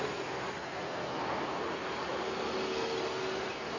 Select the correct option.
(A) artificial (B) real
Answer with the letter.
B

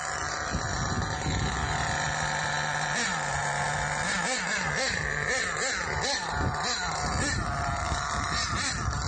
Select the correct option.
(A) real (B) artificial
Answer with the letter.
A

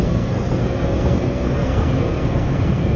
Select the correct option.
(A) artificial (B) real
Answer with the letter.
A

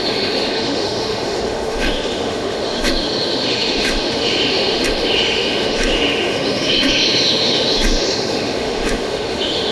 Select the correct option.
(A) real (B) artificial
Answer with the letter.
B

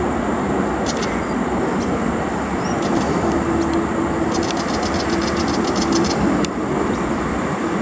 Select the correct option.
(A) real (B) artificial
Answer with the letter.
A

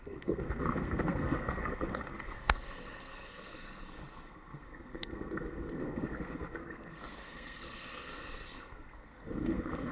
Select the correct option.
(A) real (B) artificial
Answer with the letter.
B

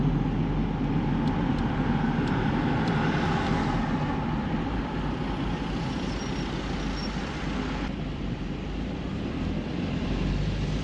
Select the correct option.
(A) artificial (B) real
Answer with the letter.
B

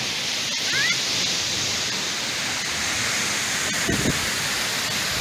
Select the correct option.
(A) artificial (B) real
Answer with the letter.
B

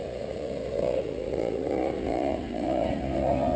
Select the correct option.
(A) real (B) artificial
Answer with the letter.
B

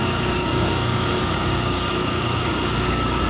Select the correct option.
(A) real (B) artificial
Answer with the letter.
B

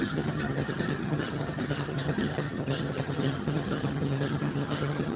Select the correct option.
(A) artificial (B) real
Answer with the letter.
A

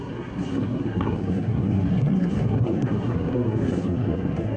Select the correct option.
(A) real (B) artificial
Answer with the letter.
B